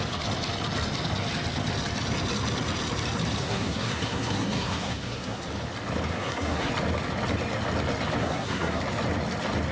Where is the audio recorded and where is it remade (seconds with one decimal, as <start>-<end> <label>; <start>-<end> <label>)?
0.0-3.4 recorded; 3.4-5.5 remade; 5.5-6.1 recorded; 6.1-6.7 remade; 6.7-8.2 recorded; 8.2-8.8 remade; 8.8-9.7 recorded